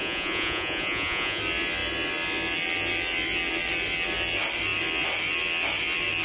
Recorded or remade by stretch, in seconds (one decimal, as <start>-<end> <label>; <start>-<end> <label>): 0.0-1.4 remade; 1.4-6.2 recorded